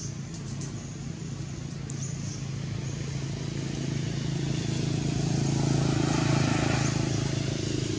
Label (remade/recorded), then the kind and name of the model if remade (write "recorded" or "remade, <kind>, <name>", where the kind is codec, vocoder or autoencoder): recorded